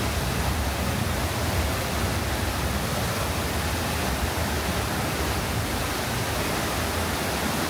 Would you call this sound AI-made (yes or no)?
no